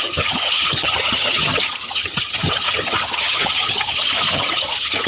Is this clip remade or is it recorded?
remade